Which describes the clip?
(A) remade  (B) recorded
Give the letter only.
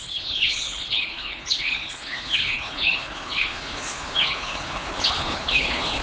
A